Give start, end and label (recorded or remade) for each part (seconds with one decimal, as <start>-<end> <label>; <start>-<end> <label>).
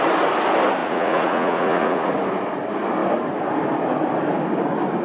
0.0-0.8 recorded; 0.8-2.1 remade; 2.1-5.0 recorded